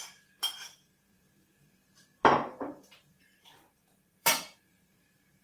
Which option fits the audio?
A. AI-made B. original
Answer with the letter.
A